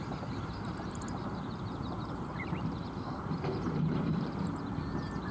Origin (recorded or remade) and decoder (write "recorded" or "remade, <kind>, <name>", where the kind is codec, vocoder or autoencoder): remade, vocoder, BigVGAN v2